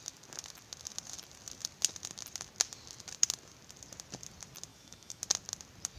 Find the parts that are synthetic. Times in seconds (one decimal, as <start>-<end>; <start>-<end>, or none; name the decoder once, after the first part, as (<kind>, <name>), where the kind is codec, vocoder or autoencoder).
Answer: 4.7-5.2 (autoencoder, DAC-VAE)